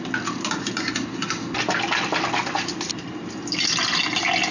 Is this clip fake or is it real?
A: real